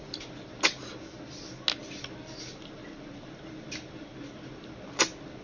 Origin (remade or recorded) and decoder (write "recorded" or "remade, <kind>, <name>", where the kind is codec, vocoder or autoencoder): recorded